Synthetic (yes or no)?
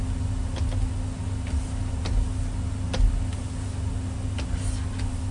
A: no